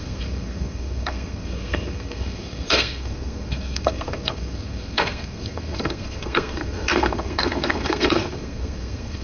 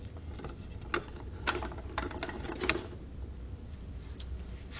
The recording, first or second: second